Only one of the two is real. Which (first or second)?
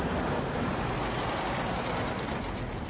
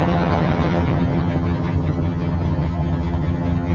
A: first